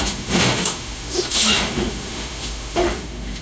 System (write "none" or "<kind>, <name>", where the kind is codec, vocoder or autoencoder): autoencoder, DAC-VAE